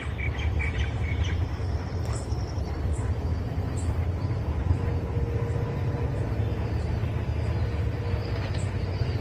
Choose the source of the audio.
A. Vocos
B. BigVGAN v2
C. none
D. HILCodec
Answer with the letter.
C